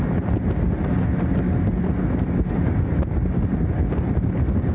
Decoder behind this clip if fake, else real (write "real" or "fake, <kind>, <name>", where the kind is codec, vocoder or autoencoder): real